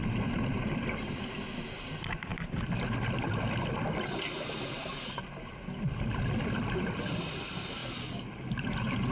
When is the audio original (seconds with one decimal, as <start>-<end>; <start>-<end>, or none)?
0.0-9.1